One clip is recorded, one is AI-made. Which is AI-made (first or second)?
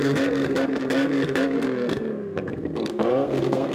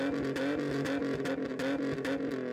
first